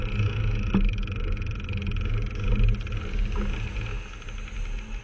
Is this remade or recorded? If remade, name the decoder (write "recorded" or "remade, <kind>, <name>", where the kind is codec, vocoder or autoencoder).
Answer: recorded